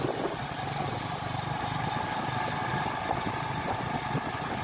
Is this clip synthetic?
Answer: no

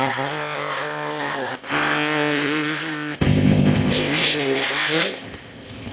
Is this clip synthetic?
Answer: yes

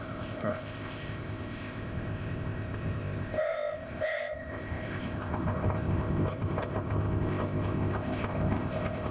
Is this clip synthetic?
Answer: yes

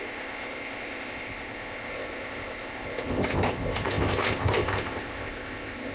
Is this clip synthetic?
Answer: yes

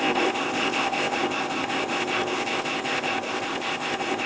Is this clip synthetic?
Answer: yes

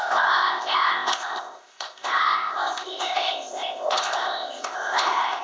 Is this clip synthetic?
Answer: yes